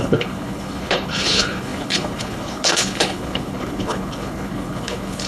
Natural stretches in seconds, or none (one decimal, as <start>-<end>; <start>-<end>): none